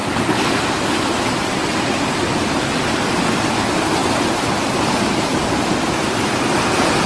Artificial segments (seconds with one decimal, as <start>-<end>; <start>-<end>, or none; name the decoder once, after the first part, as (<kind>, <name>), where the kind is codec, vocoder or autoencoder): none